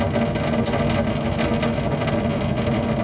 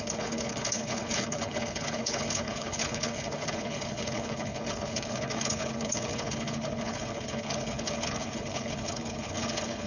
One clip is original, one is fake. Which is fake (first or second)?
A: second